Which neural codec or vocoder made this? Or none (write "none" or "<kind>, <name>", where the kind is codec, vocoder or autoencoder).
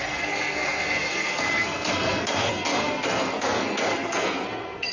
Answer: codec, SNAC